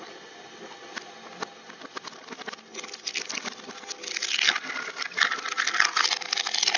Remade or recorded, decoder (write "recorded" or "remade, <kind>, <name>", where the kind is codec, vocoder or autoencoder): recorded